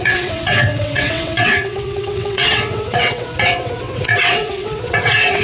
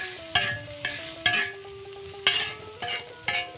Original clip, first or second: second